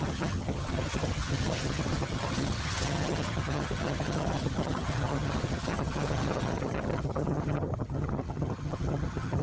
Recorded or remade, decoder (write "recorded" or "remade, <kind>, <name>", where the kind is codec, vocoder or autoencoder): remade, vocoder, HiFi-GAN